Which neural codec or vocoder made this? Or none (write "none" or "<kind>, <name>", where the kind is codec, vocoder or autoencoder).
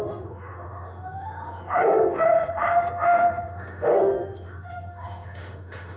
autoencoder, DAC-VAE